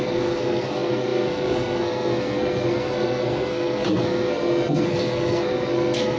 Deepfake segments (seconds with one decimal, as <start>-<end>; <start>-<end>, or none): 0.0-6.2

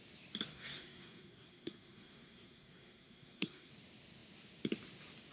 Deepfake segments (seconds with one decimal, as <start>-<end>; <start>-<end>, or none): 0.5-3.7

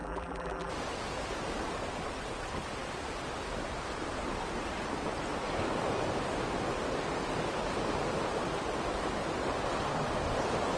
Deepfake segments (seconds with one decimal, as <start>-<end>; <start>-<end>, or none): 0.0-0.7

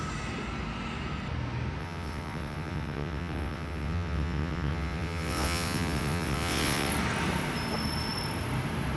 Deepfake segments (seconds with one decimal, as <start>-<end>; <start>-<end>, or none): 1.8-6.9

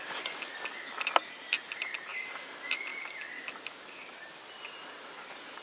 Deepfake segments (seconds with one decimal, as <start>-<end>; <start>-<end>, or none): none

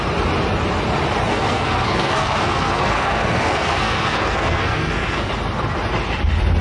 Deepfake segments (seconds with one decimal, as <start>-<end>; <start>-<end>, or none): 1.3-5.3